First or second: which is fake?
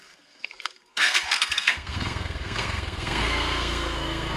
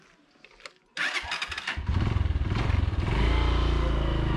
first